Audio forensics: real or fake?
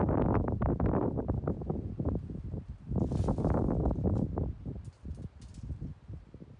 real